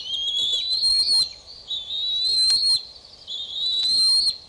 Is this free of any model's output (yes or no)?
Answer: yes